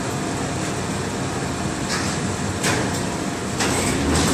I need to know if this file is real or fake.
real